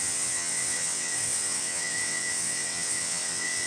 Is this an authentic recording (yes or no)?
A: no